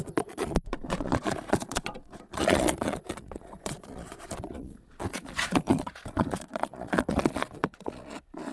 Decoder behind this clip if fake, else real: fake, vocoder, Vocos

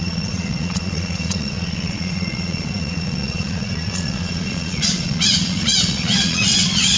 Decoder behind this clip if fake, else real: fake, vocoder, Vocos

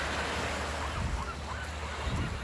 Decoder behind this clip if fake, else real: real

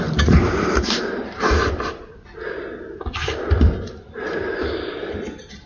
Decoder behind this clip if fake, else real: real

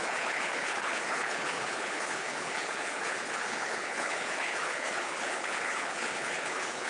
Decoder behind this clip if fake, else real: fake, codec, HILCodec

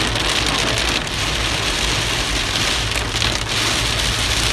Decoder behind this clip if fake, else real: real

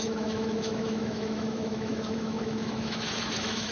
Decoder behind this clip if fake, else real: fake, autoencoder, DAC-VAE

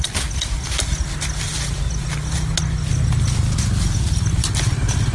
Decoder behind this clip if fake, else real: real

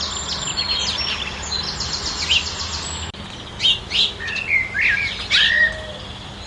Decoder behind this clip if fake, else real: real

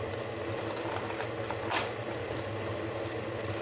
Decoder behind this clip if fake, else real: real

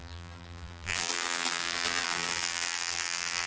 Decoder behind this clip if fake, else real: fake, vocoder, BigVGAN v2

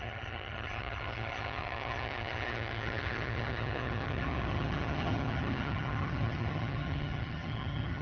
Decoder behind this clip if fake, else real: fake, vocoder, HiFi-GAN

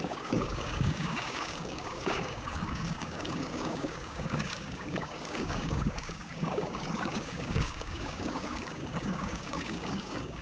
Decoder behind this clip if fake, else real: fake, codec, DAC